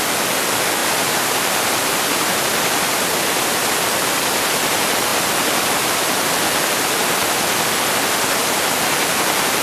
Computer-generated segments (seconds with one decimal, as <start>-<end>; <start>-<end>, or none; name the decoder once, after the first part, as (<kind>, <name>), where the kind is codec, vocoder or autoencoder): 0.8-2.4 (vocoder, BigVGAN v2)